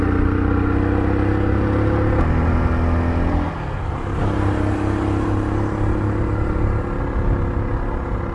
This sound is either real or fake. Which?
real